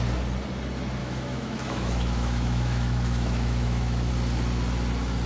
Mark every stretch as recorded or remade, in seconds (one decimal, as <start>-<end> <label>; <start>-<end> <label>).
0.0-1.0 recorded; 1.0-4.1 remade; 4.1-5.3 recorded